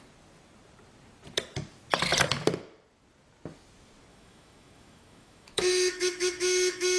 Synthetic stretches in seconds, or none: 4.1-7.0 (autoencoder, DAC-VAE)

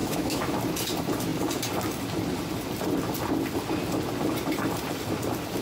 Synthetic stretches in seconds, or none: 0.0-0.6 (autoencoder, DAC-VAE)

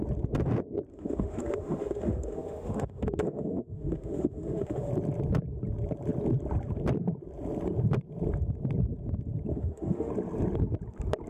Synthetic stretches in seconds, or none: 0.9-4.9 (autoencoder, DAC-VAE); 9.5-10.1

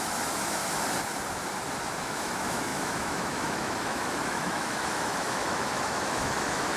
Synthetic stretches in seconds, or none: 0.0-0.6 (autoencoder, DAC-VAE); 2.0-6.8

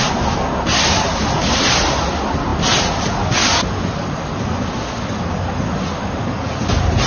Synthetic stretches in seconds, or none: none

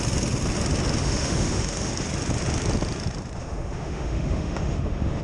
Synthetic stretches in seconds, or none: 1.0-1.9 (autoencoder, DAC-VAE); 3.4-5.2